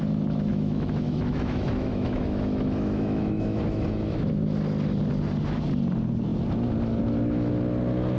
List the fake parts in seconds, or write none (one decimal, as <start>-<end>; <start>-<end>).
0.5-4.3